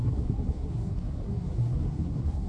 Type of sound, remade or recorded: remade